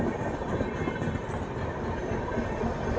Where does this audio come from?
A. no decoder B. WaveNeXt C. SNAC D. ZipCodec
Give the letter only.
A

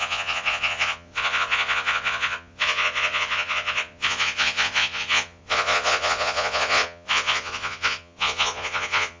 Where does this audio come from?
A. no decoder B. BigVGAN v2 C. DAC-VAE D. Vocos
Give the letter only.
D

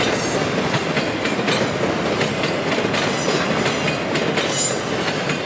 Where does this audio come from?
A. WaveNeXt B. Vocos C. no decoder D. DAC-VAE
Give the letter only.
C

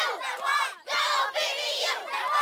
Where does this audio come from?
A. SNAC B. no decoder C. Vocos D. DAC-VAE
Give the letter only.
B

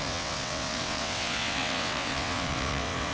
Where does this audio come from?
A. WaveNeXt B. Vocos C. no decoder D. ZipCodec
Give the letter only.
A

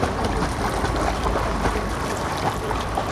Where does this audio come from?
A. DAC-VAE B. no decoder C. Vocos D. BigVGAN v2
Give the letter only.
D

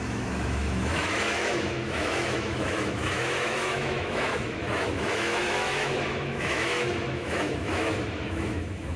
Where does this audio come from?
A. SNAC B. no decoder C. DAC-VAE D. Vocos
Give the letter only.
C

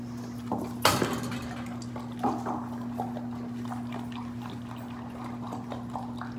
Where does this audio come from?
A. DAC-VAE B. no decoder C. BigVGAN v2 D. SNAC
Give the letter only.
B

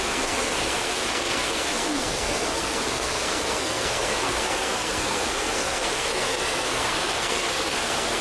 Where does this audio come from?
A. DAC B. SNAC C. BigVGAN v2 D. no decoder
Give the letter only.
B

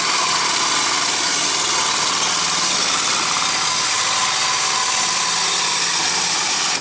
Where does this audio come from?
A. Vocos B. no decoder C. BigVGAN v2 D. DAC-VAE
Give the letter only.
B